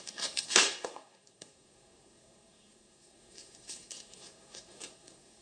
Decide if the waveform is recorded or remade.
remade